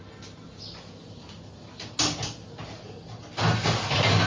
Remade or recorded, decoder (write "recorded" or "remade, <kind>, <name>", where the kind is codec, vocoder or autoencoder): recorded